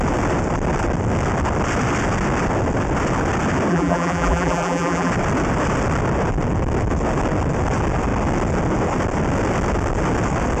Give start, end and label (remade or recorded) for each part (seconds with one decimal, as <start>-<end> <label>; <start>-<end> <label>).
0.0-3.7 recorded; 3.7-5.1 remade; 5.1-10.6 recorded